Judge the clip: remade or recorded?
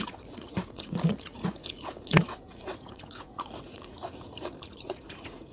remade